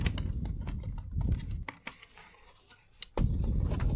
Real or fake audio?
real